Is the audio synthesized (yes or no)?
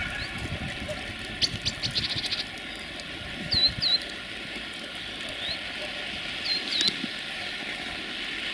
no